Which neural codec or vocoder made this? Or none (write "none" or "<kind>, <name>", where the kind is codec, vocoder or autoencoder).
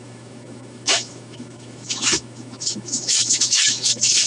autoencoder, DAC-VAE